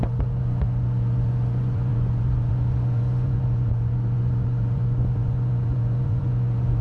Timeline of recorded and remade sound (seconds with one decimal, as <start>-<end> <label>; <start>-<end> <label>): 0.0-6.8 remade